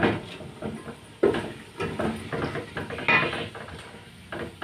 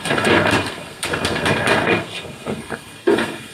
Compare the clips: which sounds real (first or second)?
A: first